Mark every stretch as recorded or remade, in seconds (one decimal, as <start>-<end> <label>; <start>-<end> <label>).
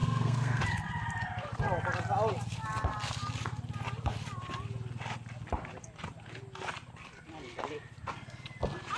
0.0-0.6 remade; 0.6-9.0 recorded